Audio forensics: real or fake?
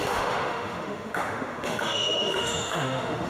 fake